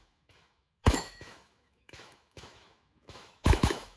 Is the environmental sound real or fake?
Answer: fake